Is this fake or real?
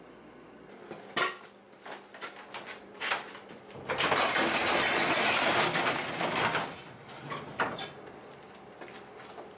real